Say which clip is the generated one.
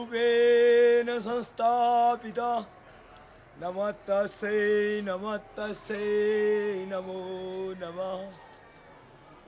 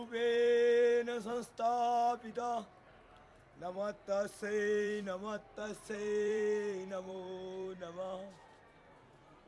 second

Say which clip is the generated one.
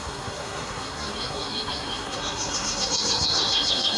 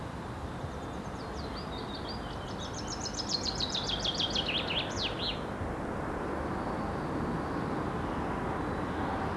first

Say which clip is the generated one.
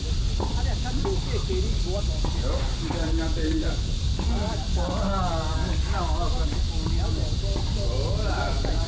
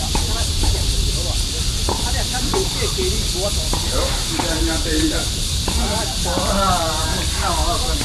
second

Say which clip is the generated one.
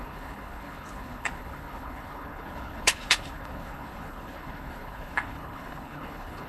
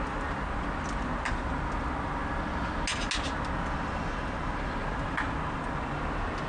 first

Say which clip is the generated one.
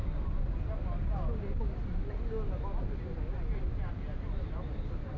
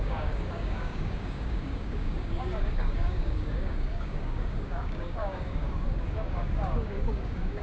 second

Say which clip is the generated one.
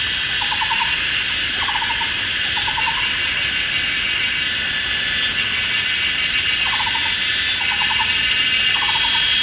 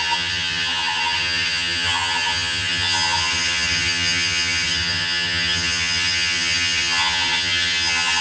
second